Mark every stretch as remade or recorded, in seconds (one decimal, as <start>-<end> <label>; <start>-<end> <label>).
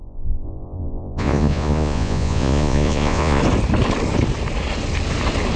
0.0-3.4 remade; 3.4-5.6 recorded